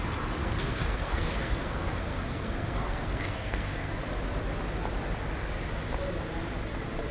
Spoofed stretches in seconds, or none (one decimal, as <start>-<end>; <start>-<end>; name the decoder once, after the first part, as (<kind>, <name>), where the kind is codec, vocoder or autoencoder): 0.4-4.0 (codec, SNAC)